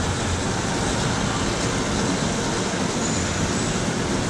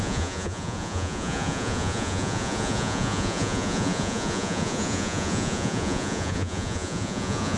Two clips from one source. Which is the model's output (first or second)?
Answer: second